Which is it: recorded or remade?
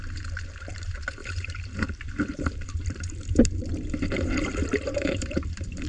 remade